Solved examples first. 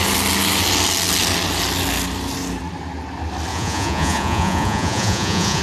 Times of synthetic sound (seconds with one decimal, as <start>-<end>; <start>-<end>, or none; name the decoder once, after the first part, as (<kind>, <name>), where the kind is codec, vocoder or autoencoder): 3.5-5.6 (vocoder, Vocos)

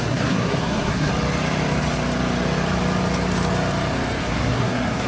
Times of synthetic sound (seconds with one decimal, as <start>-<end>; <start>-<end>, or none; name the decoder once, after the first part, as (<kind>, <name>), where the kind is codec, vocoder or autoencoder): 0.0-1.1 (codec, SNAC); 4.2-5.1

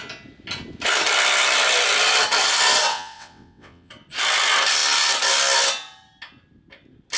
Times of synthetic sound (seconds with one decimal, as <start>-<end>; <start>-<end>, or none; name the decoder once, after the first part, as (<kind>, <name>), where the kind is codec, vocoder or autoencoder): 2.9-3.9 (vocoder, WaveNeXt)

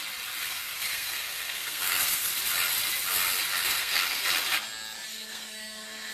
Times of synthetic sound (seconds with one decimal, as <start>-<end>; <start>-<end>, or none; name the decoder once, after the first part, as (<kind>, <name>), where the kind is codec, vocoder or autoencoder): 0.4-2.3 (codec, SNAC); 3.6-4.2; 5.1-6.1

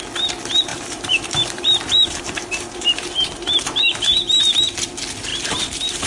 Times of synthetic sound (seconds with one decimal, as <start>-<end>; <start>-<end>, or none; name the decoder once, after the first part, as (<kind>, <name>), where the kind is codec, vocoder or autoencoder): 0.7-4.4 (vocoder, BigVGAN v2); 5.3-6.1

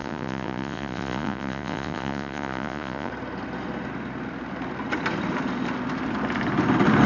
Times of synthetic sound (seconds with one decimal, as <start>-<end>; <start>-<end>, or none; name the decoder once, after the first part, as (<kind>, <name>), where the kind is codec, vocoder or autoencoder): 0.0-3.1 (vocoder, Vocos)

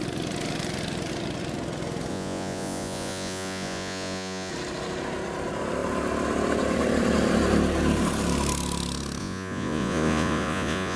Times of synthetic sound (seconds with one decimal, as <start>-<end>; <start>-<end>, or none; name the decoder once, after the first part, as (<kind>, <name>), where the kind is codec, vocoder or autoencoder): 2.1-4.5 (vocoder, Vocos); 9.2-11.0